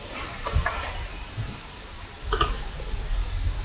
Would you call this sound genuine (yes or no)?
no